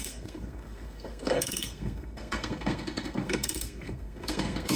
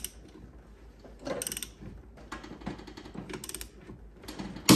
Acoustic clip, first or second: second